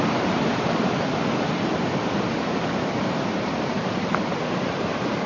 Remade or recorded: remade